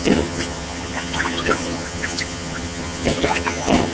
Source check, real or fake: fake